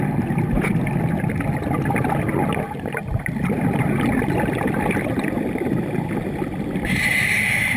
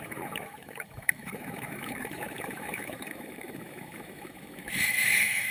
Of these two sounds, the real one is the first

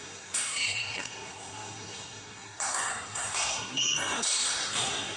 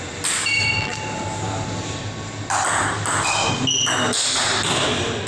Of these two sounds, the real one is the second